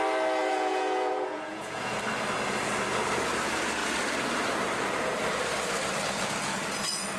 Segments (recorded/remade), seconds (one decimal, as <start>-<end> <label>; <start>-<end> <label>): 0.0-0.4 recorded; 0.4-2.0 remade; 2.0-7.2 recorded